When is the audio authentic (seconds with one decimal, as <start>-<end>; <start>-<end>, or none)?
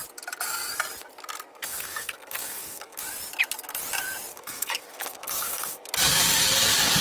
0.0-1.5; 3.0-4.3; 5.9-7.0